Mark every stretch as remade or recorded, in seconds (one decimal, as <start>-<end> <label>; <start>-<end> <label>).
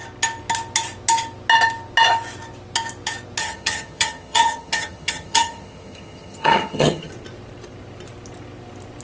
0.0-3.4 recorded; 3.4-7.1 remade; 7.1-9.0 recorded